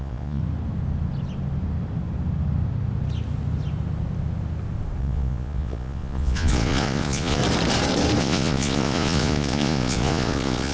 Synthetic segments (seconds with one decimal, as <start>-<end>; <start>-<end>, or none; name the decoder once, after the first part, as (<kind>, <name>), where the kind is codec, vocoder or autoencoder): 0.0-0.4 (vocoder, Vocos); 5.0-7.4; 8.2-10.7